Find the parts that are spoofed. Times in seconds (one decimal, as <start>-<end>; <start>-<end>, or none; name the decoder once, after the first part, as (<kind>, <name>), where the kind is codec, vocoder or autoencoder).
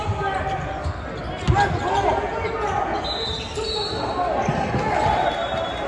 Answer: none